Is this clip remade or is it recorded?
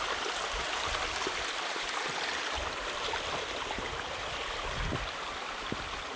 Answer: remade